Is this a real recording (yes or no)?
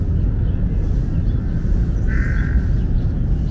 yes